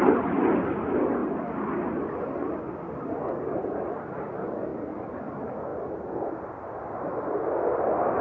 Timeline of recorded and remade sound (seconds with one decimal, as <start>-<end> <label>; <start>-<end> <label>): 0.0-8.2 recorded